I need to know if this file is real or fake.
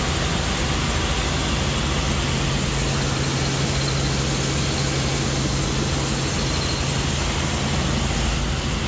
real